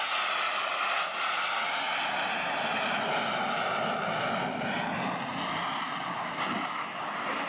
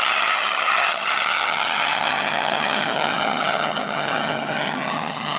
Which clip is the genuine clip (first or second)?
first